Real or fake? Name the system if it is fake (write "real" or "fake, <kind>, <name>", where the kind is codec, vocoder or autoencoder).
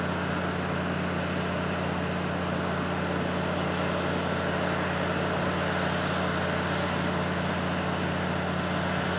real